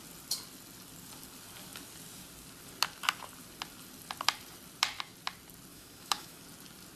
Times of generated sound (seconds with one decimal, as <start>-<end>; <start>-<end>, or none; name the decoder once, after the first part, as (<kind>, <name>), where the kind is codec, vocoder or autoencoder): 5.7-6.4 (autoencoder, DAC-VAE)

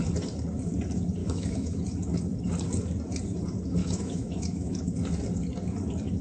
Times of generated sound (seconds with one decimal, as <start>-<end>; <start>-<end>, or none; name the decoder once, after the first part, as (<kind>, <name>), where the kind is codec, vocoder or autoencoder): 1.2-1.8 (autoencoder, DAC-VAE); 3.8-4.8

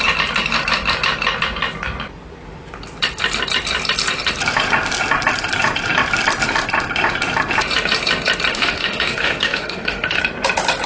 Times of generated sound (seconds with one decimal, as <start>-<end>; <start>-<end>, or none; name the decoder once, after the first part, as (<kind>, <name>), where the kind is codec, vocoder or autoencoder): 8.5-10.2 (autoencoder, DAC-VAE)

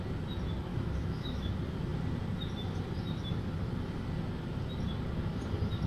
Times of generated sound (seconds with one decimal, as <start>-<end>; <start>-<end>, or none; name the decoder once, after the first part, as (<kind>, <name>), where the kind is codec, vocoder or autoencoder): 0.7-1.5 (autoencoder, DAC-VAE)

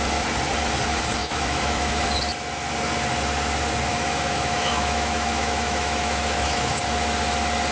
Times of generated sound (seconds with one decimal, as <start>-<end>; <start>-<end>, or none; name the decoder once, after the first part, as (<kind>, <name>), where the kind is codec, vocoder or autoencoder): 1.2-1.9 (autoencoder, DAC-VAE); 3.9-6.8

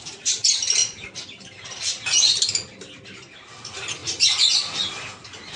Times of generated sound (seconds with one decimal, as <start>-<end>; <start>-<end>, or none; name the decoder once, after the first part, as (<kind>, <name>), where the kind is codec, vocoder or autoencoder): none

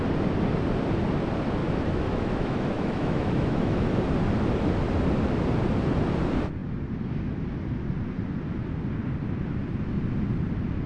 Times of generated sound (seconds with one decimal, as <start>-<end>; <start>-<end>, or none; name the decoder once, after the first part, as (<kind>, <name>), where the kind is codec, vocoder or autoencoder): 1.6-4.0 (autoencoder, DAC-VAE)